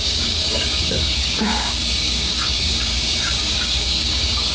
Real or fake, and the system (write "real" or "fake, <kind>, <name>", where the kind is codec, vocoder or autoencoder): fake, codec, DAC